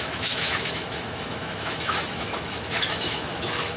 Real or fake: fake